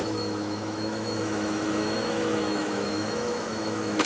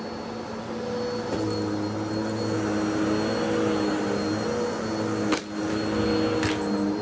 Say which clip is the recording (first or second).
second